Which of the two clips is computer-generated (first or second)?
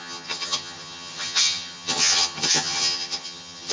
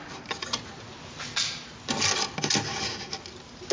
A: first